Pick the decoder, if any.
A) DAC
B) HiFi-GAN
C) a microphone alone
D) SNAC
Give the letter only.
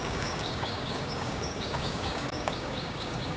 A